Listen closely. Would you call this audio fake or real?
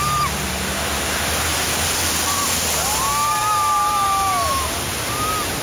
real